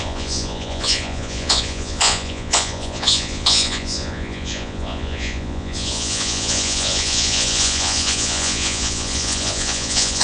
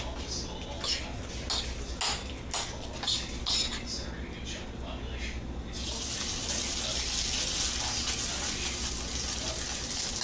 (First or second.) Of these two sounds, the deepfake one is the first